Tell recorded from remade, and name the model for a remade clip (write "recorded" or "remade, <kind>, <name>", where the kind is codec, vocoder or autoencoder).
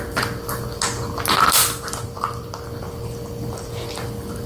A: recorded